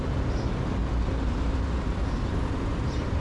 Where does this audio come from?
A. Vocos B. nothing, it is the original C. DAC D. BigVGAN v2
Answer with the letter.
B